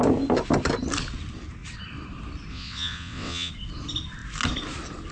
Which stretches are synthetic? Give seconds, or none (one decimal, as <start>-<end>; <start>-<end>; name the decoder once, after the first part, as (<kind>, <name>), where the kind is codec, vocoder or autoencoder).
2.5-3.5 (vocoder, WaveNeXt)